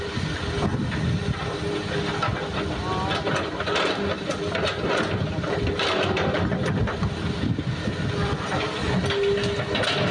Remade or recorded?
recorded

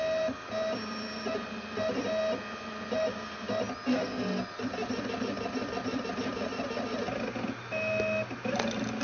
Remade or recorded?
recorded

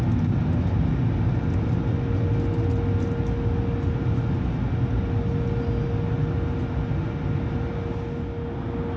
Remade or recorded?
recorded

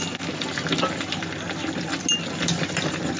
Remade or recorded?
recorded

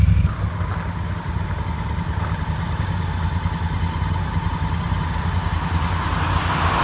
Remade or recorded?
recorded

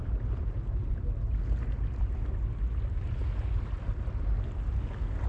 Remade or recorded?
recorded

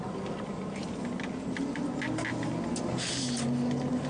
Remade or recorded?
recorded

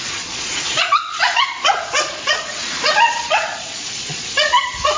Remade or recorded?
remade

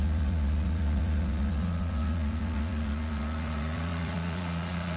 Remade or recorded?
remade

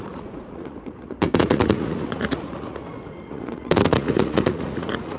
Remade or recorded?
remade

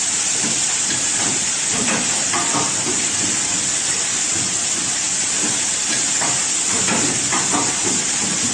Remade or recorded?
recorded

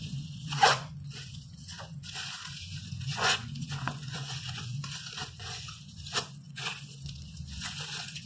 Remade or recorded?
remade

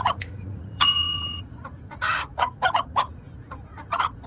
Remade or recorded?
remade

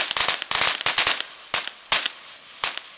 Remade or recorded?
recorded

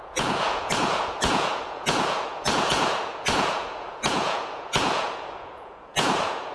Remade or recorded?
remade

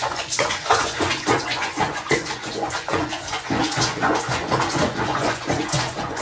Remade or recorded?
remade